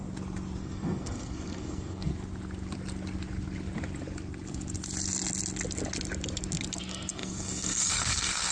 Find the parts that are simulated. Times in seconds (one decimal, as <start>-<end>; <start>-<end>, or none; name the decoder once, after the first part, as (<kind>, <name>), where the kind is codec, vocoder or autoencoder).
0.6-2.1 (codec, SNAC); 6.8-8.5